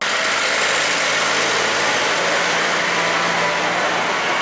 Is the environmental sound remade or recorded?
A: recorded